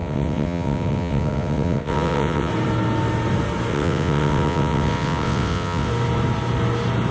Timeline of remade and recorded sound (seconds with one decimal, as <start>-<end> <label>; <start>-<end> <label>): 0.0-2.5 remade; 2.5-3.7 recorded; 3.7-5.9 remade; 5.9-7.1 recorded